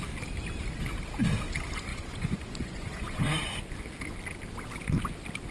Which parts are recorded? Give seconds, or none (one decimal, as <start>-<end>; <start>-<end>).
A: 0.0-1.9; 3.6-5.5